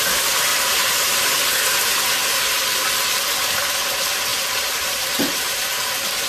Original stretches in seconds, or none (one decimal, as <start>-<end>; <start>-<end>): 0.0-0.5; 1.3-4.3